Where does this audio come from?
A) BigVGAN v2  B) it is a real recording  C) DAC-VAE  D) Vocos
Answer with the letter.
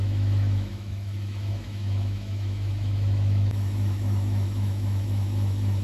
C